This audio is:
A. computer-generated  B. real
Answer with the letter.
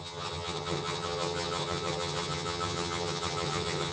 A